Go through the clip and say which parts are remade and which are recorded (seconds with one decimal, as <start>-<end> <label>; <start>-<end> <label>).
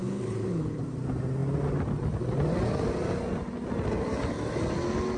0.0-0.8 remade; 0.8-5.2 recorded